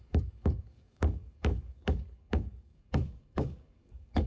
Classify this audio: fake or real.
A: fake